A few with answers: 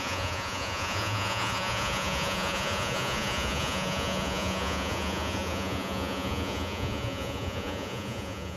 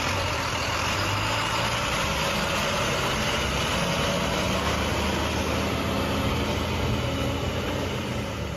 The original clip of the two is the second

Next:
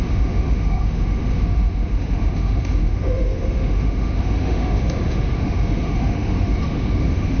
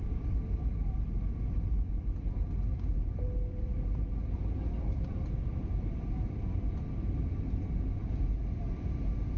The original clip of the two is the second